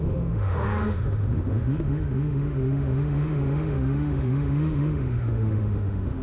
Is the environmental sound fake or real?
fake